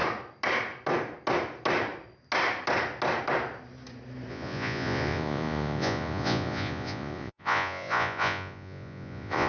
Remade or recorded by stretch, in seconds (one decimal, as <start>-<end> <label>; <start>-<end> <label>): 0.0-4.3 recorded; 4.3-9.5 remade